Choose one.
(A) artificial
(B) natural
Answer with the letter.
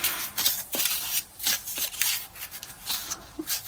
A